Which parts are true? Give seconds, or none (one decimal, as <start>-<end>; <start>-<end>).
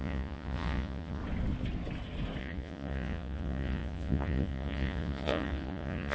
1.2-2.4